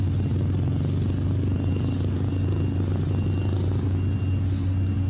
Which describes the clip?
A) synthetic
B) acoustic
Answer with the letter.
B